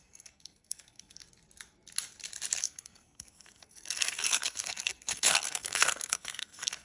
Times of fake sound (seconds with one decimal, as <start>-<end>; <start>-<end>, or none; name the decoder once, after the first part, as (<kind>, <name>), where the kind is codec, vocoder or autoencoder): 0.0-1.2 (codec, SNAC); 2.6-6.8